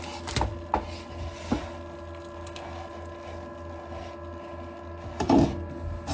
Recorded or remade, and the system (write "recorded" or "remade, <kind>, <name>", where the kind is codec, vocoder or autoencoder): recorded